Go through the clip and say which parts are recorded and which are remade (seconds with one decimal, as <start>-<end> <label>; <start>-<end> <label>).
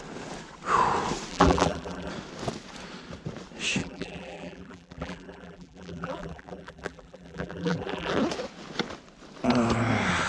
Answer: 0.0-1.3 recorded; 1.3-2.1 remade; 2.1-3.8 recorded; 3.8-8.1 remade; 8.1-10.3 recorded